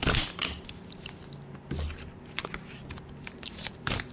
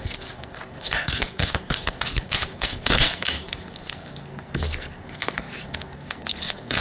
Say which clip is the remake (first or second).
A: second